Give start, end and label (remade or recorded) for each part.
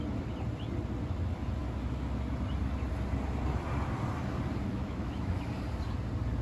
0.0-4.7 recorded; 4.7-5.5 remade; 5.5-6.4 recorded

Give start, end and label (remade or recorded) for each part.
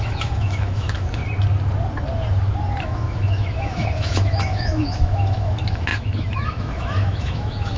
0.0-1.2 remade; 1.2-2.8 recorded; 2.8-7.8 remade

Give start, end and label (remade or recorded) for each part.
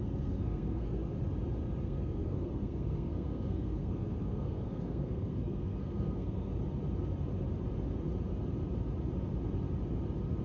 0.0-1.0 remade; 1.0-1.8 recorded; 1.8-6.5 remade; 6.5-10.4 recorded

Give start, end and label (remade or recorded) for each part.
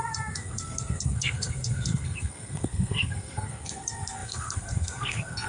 0.0-5.5 remade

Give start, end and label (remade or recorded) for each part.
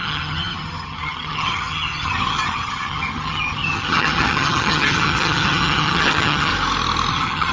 0.0-6.5 remade; 6.5-7.1 recorded; 7.1-7.5 remade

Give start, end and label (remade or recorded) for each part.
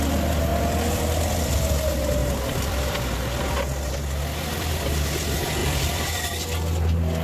0.0-0.5 recorded; 0.5-1.3 remade; 1.3-2.2 recorded; 2.2-3.4 remade; 3.4-5.6 recorded; 5.6-6.1 remade; 6.1-7.2 recorded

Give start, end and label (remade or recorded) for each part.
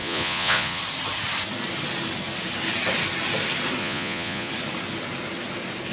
0.0-0.8 remade; 0.8-3.8 recorded; 3.8-4.5 remade; 4.5-5.9 recorded